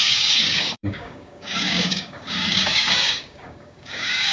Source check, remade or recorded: remade